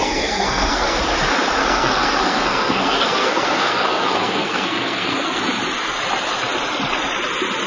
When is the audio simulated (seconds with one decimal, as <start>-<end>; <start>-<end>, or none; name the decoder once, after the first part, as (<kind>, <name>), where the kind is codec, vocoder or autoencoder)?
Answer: 0.0-1.0 (codec, SNAC); 1.6-5.4